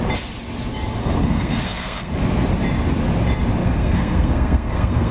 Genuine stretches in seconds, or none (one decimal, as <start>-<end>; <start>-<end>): 0.0-1.0; 2.1-3.6